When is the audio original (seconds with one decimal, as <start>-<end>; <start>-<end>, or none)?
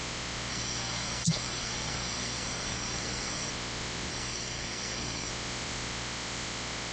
0.0-0.5; 3.5-4.1; 5.3-6.9